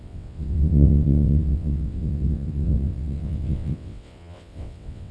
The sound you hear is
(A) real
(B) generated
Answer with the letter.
B